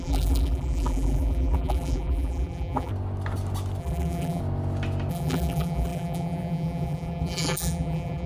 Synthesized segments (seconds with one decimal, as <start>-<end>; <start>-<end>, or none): 0.0-2.9; 3.8-4.4; 5.1-8.3